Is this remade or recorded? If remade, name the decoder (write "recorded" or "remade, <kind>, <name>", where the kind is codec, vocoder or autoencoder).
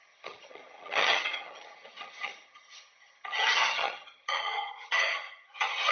remade, vocoder, HiFi-GAN